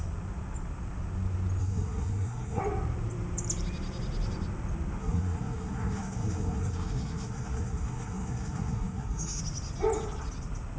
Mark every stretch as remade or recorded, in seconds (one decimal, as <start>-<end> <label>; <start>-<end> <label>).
0.0-1.6 recorded; 1.6-2.6 remade; 2.6-5.0 recorded; 5.0-9.4 remade; 9.4-10.8 recorded